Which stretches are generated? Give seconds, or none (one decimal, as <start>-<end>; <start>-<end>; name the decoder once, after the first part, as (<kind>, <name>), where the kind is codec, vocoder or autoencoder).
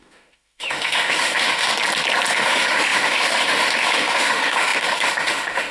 0.0-1.7 (autoencoder, DAC-VAE); 2.3-5.7